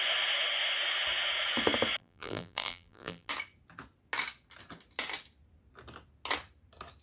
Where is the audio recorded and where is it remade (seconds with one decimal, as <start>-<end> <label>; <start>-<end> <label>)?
0.0-2.0 recorded; 2.0-3.3 remade; 3.3-7.0 recorded